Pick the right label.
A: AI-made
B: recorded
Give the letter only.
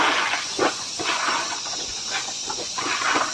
A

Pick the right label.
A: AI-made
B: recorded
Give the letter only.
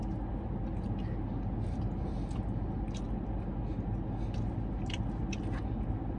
B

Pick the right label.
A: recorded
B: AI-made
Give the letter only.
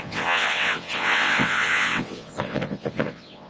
B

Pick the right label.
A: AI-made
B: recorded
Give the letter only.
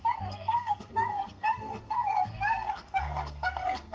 A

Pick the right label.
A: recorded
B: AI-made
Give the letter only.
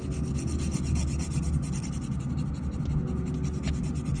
A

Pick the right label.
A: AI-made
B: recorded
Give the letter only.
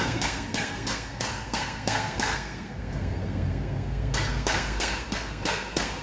A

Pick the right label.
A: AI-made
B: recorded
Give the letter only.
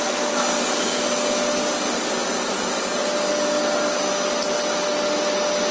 B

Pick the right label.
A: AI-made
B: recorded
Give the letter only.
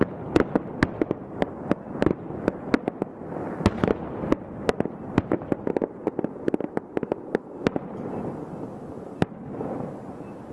B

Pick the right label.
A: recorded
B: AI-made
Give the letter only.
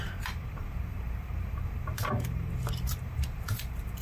B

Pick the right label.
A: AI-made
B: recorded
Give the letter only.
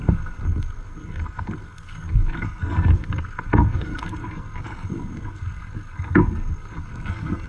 A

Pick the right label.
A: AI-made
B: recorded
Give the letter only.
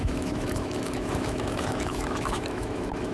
A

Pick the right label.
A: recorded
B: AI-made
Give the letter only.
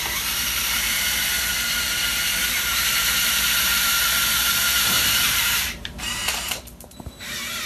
B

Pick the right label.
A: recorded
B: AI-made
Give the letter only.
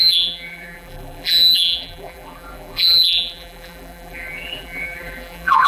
B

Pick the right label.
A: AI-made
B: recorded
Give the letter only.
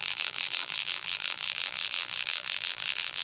A